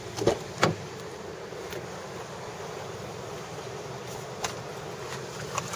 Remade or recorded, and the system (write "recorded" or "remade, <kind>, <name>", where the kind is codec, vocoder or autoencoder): recorded